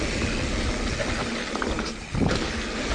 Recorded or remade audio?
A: recorded